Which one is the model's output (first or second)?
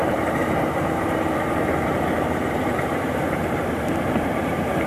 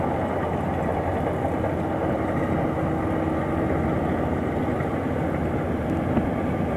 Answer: first